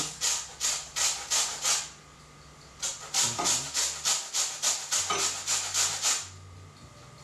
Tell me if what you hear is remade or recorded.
recorded